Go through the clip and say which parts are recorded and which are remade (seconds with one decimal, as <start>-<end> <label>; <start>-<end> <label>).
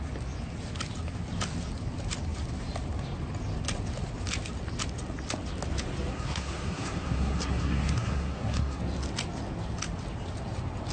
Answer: 0.0-6.1 recorded; 6.1-8.8 remade; 8.8-10.9 recorded